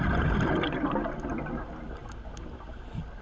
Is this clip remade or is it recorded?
remade